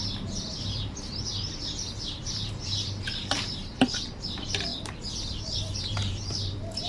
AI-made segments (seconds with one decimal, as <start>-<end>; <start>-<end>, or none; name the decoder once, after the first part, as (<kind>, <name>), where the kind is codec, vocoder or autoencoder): 0.0-1.3 (vocoder, BigVGAN v2); 2.2-4.7; 5.8-6.9